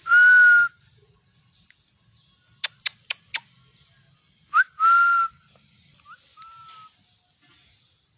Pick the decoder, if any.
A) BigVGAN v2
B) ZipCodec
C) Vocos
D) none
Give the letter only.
D